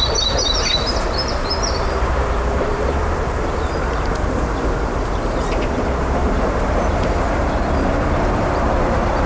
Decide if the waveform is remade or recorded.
remade